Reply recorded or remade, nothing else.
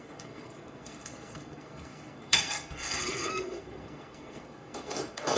remade